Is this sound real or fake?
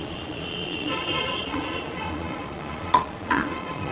fake